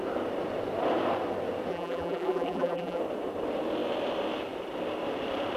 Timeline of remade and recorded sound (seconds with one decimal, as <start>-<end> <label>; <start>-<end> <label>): 0.0-1.7 recorded; 1.7-3.0 remade; 3.0-5.6 recorded